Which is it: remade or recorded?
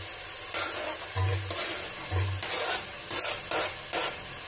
recorded